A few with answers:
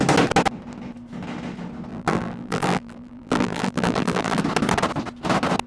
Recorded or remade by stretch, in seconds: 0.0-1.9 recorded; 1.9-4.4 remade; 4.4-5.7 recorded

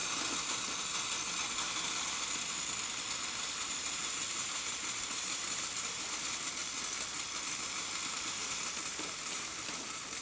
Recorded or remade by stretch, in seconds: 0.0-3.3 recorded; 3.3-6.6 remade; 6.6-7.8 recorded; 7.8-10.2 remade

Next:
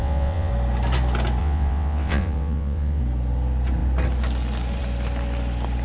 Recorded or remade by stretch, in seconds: 0.0-0.5 remade; 0.5-1.4 recorded; 1.4-3.0 remade; 3.0-5.8 recorded

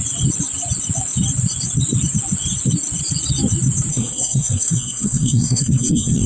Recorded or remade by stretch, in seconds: 0.0-3.9 recorded; 3.9-6.3 remade